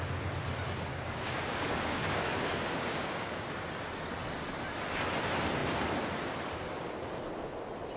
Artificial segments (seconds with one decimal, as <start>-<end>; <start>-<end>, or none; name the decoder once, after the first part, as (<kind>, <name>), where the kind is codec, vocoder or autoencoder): 0.9-3.4 (codec, DAC)